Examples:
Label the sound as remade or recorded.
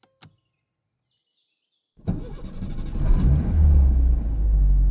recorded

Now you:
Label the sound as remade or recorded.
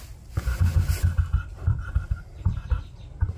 recorded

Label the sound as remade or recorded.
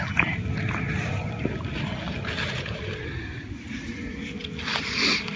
recorded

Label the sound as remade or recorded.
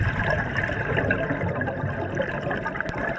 recorded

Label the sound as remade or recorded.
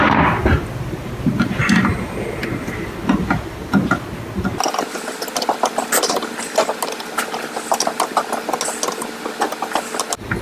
recorded